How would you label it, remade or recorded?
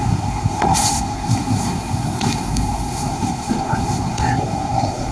remade